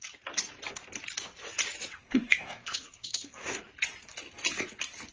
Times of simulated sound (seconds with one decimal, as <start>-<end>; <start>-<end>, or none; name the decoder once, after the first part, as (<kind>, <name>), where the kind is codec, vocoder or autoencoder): 2.0-3.6 (codec, SNAC)